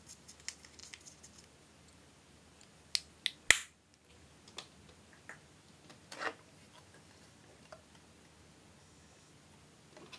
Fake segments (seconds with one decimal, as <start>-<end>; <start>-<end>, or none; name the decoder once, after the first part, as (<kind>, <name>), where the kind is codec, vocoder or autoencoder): 8.8-9.3 (autoencoder, DAC-VAE)